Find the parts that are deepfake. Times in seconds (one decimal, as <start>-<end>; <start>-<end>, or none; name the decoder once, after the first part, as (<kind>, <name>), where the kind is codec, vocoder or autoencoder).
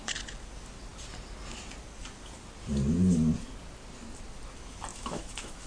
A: 4.9-5.7 (autoencoder, DAC-VAE)